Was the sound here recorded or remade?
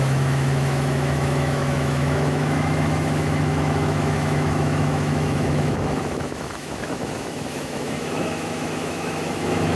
remade